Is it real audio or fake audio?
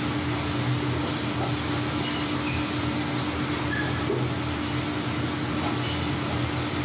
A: real